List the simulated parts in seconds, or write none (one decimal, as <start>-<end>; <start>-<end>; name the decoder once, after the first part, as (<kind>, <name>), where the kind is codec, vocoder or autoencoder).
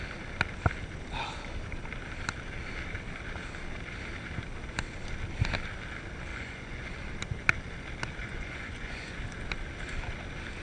6.3-6.9 (vocoder, Vocos); 8.2-9.2